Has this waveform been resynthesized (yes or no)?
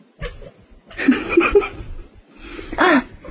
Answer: no